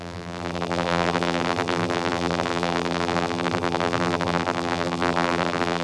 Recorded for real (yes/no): no